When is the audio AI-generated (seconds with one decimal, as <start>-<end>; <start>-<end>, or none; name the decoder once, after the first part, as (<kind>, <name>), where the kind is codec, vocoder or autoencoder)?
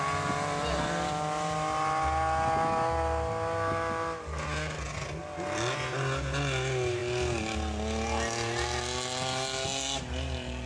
none